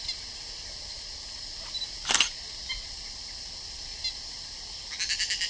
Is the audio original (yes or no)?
yes